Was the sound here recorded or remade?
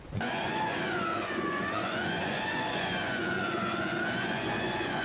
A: remade